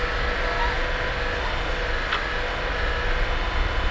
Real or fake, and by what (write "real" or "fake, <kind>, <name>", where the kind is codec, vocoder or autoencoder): real